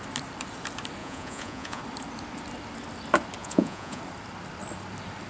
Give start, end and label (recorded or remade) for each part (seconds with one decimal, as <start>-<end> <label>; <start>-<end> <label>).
0.0-1.0 recorded; 1.0-1.8 remade; 1.8-3.4 recorded; 3.4-4.0 remade; 4.0-5.3 recorded